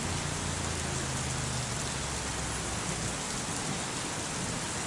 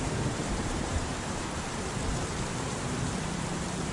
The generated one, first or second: second